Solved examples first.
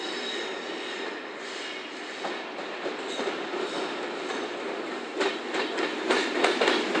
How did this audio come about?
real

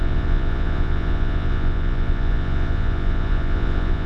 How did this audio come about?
fake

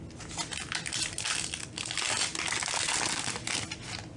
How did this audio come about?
real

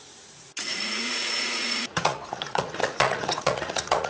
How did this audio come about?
fake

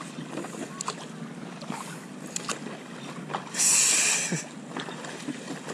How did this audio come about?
real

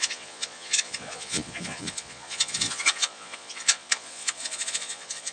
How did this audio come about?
fake